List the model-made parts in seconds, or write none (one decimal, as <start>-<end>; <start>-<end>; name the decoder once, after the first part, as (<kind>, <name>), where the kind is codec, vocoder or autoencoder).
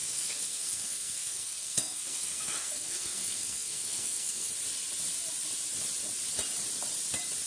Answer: 0.0-4.5 (codec, SNAC)